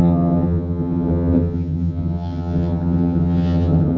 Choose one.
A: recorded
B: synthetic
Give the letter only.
B